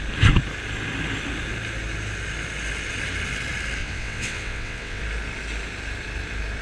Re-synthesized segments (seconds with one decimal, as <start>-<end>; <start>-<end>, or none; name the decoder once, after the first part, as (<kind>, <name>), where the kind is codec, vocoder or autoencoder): 3.8-5.0 (vocoder, WaveNeXt)